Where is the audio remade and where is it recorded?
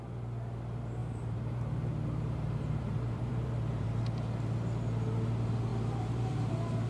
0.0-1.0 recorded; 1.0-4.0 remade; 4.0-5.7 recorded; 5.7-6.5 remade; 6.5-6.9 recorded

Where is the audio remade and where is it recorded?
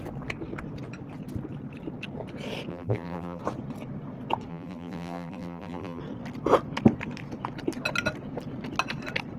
0.0-2.7 recorded; 2.7-3.4 remade; 3.4-4.5 recorded; 4.5-6.0 remade; 6.0-9.4 recorded